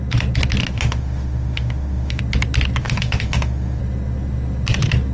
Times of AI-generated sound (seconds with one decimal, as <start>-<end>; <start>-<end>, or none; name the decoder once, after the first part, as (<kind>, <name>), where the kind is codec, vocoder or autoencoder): 0.6-2.2 (autoencoder, DAC-VAE); 2.8-3.8